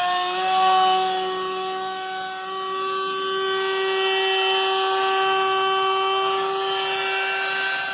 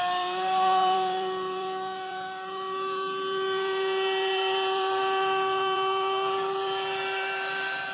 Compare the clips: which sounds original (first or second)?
first